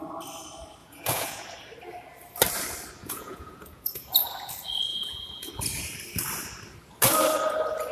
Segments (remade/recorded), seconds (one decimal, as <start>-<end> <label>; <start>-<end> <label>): 0.0-0.8 recorded; 0.8-1.5 remade; 1.5-3.0 recorded; 3.0-4.1 remade; 4.1-4.9 recorded; 4.9-5.5 remade; 5.5-7.9 recorded

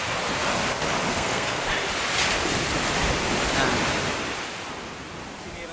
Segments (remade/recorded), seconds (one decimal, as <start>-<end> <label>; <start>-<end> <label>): 0.0-1.1 recorded; 1.1-1.6 remade; 1.6-5.7 recorded

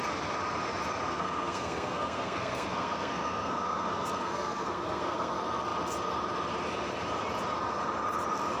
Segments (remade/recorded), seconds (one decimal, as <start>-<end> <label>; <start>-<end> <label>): 0.0-1.1 recorded; 1.1-5.3 remade; 5.3-8.6 recorded